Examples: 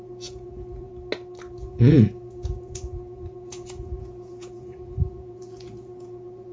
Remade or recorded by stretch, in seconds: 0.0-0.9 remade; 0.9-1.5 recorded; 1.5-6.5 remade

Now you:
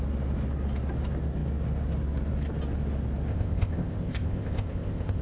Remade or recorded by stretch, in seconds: 0.0-3.3 recorded; 3.3-5.2 remade

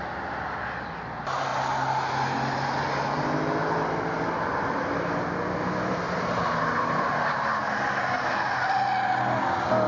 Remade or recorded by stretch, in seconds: 0.0-9.9 recorded